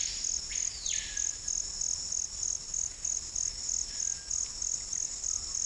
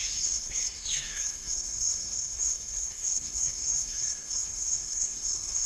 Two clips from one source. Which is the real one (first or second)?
first